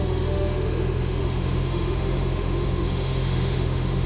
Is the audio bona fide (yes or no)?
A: no